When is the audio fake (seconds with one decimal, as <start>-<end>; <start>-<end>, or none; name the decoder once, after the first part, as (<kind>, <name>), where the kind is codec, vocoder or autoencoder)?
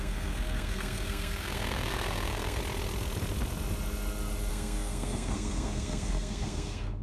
0.0-2.6 (codec, SNAC); 4.5-7.0